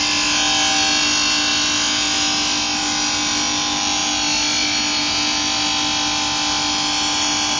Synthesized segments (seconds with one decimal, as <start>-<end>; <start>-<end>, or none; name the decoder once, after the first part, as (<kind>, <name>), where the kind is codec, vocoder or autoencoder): none